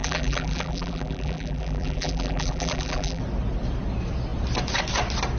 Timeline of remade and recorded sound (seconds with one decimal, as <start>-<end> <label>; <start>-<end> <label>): 0.0-3.2 remade; 3.2-5.4 recorded